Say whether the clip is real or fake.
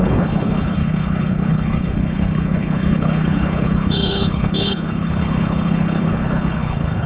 fake